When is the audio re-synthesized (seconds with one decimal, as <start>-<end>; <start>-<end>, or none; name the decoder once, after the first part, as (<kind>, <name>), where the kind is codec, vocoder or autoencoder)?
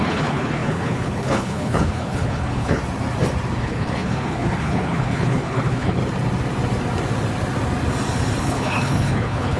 0.0-2.8 (codec, HILCodec); 3.6-6.0; 8.4-9.6